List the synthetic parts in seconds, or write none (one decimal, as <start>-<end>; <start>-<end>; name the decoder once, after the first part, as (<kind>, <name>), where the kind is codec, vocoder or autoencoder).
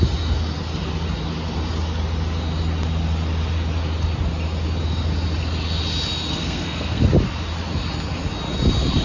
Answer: 6.3-7.0 (codec, SNAC)